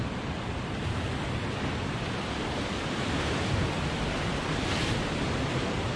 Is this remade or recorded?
recorded